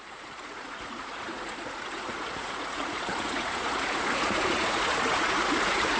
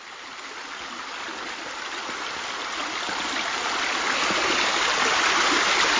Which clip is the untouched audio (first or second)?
second